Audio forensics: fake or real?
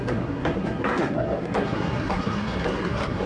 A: fake